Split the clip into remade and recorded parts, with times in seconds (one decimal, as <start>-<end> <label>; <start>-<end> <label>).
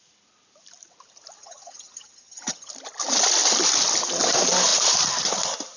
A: 0.0-1.4 recorded; 1.4-2.7 remade; 2.7-5.8 recorded